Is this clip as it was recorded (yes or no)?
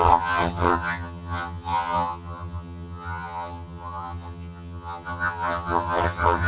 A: no